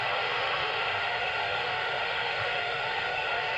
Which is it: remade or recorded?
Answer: remade